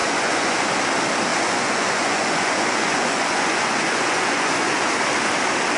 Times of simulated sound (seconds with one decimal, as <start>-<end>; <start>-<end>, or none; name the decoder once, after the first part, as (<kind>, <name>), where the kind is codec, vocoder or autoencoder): 0.0-0.8 (vocoder, Vocos); 1.3-4.8